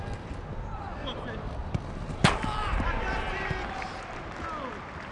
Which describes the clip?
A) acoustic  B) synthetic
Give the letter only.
A